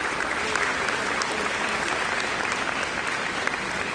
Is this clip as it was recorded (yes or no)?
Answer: yes